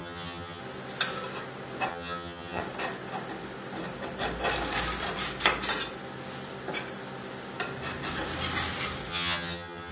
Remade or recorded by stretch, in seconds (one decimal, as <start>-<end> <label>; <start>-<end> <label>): 0.0-0.6 remade; 0.6-1.9 recorded; 1.9-2.6 remade; 2.6-9.1 recorded; 9.1-9.9 remade